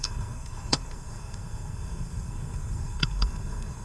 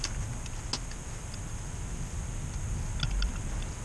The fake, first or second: first